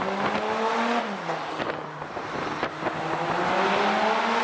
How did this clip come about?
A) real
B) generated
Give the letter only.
A